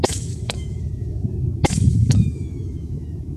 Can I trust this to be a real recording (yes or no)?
no